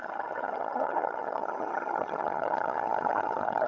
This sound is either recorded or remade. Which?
remade